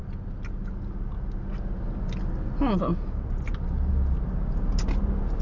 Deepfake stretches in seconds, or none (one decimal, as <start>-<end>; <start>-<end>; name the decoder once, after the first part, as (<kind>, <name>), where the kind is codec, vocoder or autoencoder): none